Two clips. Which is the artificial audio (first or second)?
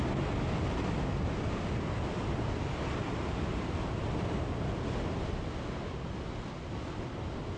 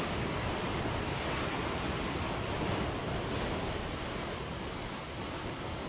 second